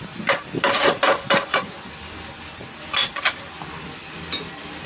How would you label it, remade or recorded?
recorded